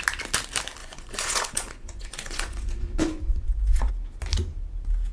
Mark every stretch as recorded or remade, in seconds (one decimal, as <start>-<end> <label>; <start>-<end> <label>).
0.0-0.8 recorded; 0.8-3.9 remade; 3.9-5.1 recorded